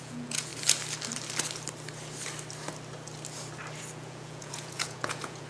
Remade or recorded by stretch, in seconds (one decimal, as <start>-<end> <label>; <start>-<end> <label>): 0.0-0.5 remade; 0.5-3.8 recorded; 3.8-5.5 remade